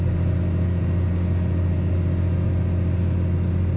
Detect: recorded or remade recorded